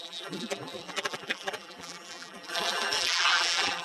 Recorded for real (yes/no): no